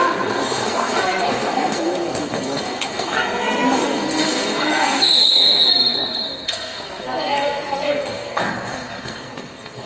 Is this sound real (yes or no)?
no